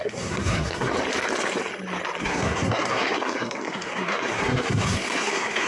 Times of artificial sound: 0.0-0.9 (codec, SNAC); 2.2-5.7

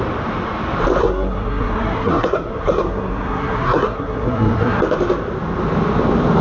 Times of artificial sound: 1.0-4.8 (codec, SNAC)

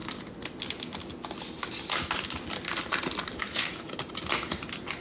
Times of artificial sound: 3.4-3.9 (autoencoder, DAC-VAE)